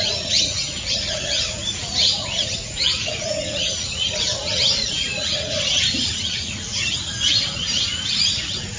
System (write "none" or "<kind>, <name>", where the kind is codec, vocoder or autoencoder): vocoder, Vocos